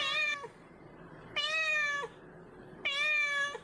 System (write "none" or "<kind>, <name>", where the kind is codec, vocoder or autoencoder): none